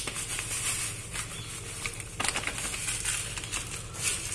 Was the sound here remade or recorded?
recorded